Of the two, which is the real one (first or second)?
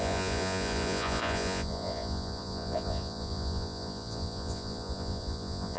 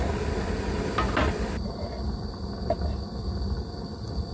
second